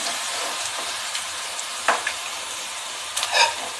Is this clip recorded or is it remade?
remade